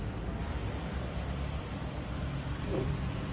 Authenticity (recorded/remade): remade